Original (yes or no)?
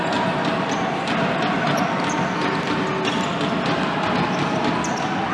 yes